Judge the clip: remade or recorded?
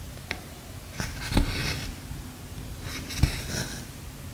recorded